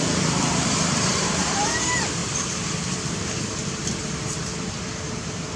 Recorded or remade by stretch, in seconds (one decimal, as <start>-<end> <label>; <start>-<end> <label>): 0.0-2.2 remade; 2.2-3.1 recorded; 3.1-4.0 remade; 4.0-5.1 recorded; 5.1-5.6 remade